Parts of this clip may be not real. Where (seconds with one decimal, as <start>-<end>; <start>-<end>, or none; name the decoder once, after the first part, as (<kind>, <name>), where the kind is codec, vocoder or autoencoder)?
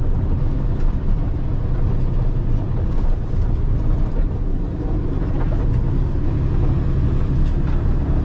3.4-4.1 (vocoder, BigVGAN v2); 4.5-5.4